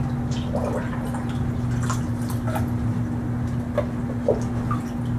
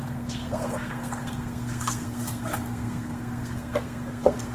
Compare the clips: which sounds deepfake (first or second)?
second